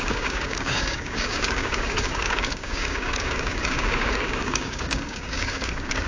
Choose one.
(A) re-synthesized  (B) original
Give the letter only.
A